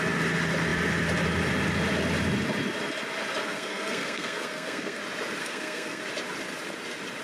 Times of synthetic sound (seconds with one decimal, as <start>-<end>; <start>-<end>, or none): 3.4-5.0; 5.4-6.0